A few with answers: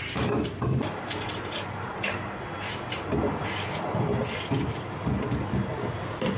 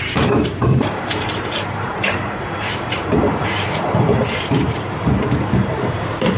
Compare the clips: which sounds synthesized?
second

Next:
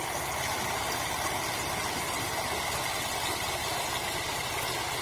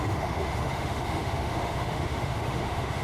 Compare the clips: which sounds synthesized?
second